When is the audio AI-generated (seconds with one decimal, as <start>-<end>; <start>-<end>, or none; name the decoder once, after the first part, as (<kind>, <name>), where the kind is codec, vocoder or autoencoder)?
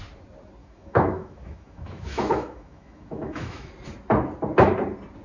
0.6-3.7 (autoencoder, DAC-VAE)